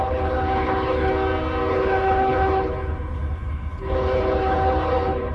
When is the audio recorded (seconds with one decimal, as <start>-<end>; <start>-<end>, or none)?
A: 1.1-1.7